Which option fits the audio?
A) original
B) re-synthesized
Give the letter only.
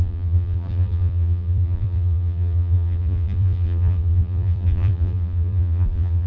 B